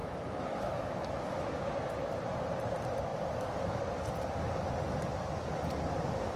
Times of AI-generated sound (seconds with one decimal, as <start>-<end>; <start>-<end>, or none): 0.0-1.7; 3.1-3.8